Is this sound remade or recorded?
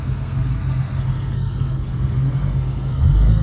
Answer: remade